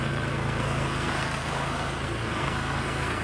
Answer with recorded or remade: remade